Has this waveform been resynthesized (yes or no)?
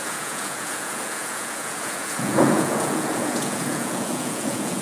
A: yes